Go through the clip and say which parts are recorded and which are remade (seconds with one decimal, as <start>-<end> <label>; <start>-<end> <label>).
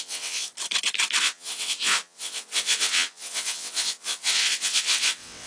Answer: 0.0-0.5 remade; 0.5-1.2 recorded; 1.2-5.5 remade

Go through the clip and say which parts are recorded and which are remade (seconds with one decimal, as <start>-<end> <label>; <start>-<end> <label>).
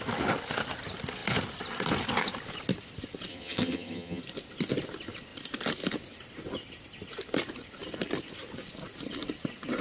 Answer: 0.0-3.3 recorded; 3.3-4.2 remade; 4.2-9.8 recorded